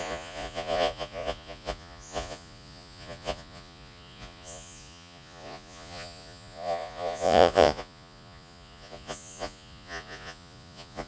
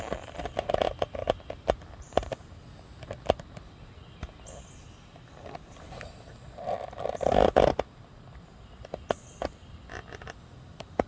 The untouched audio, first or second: second